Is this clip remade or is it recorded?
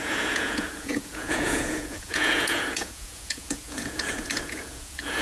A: remade